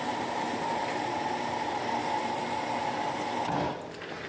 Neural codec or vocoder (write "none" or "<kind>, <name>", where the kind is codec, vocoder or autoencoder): none